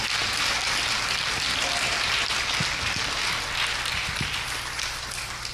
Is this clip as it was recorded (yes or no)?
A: yes